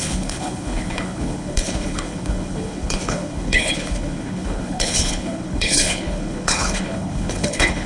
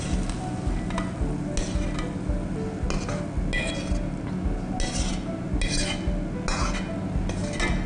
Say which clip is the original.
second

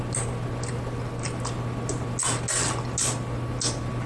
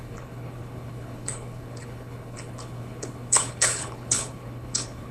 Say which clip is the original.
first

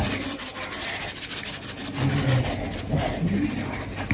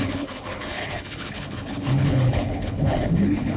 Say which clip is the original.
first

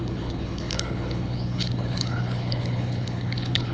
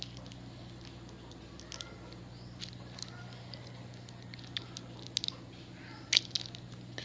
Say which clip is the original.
second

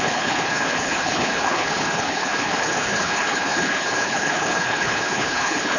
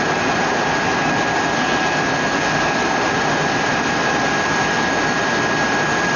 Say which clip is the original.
second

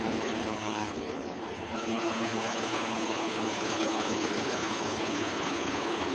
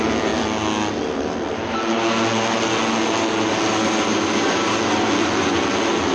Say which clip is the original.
second